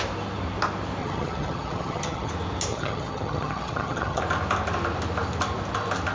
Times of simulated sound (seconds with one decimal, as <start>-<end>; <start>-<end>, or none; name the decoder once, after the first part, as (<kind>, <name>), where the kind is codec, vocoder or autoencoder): 1.0-2.3 (vocoder, HiFi-GAN); 2.7-4.2